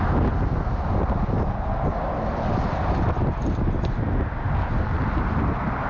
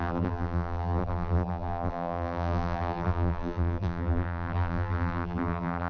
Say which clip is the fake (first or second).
second